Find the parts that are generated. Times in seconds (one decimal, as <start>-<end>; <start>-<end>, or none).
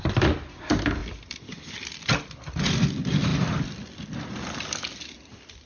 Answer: none